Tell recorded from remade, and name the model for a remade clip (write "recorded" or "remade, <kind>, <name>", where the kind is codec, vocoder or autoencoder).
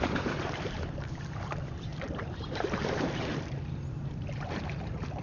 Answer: remade, vocoder, BigVGAN v2